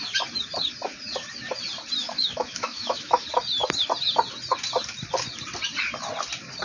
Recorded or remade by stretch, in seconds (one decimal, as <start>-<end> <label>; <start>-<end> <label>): 0.0-2.0 recorded; 2.0-3.2 remade; 3.2-6.6 recorded